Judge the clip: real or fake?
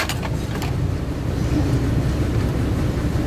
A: real